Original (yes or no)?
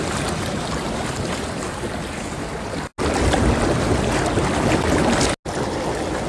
yes